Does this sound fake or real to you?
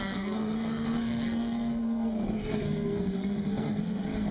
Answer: fake